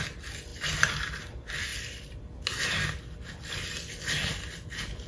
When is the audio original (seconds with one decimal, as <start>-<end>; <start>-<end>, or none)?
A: 0.0-5.1